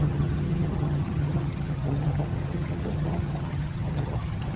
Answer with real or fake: fake